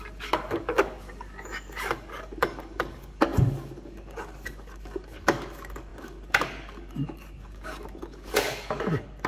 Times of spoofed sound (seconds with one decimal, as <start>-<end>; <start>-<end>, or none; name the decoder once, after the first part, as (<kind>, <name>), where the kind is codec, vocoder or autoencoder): 0.0-9.3 (codec, DAC)